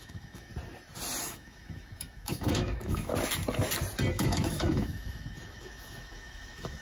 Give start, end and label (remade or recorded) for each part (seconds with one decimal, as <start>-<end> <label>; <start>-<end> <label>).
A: 0.0-0.5 remade; 0.5-1.2 recorded; 1.2-3.1 remade; 3.1-4.1 recorded; 4.1-6.8 remade